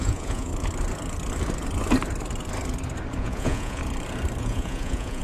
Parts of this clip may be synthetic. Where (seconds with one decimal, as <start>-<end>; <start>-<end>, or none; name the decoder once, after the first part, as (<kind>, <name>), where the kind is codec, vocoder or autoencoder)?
0.0-0.5 (vocoder, Vocos); 3.2-3.8; 4.4-5.2